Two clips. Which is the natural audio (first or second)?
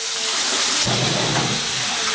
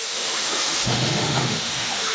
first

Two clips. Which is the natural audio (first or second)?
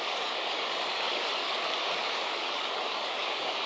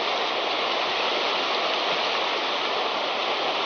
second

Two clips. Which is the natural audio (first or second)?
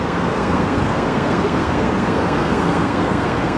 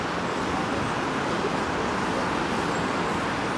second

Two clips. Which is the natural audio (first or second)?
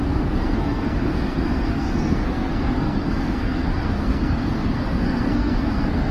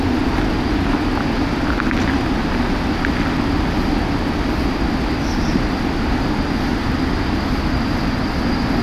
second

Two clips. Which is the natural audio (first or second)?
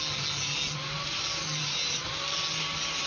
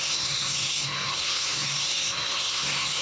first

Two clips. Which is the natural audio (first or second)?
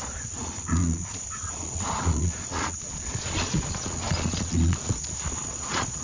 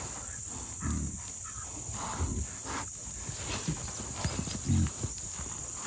second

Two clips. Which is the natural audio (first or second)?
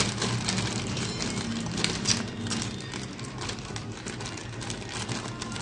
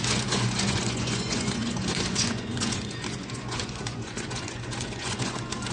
first